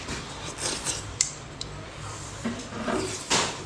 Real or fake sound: fake